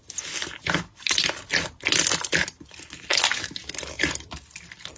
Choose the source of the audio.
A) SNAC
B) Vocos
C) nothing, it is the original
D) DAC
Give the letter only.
C